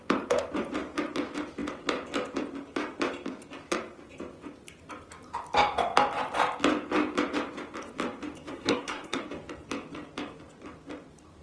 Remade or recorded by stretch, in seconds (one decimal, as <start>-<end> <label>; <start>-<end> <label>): 0.0-8.5 recorded; 8.5-9.2 remade; 9.2-11.4 recorded